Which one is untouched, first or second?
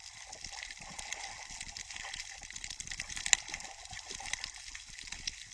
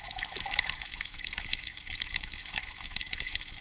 first